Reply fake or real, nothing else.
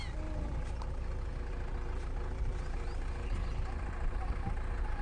real